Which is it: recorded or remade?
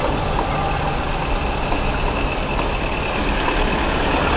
recorded